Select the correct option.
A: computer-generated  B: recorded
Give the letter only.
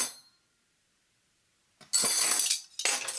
B